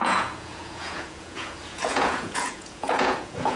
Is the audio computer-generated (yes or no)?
yes